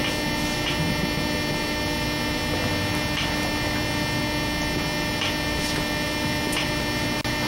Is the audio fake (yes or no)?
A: no